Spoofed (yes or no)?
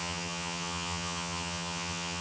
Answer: yes